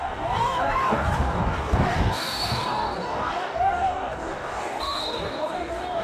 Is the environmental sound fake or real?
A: fake